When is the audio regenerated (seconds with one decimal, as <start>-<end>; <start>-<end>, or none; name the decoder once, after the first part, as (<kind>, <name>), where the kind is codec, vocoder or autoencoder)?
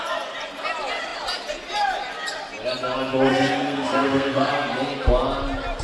3.3-4.5 (codec, SNAC)